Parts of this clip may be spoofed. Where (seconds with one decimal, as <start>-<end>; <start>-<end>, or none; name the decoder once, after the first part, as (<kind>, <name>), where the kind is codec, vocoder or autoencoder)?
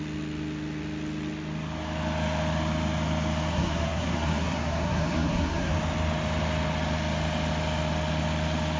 3.5-5.7 (codec, SNAC)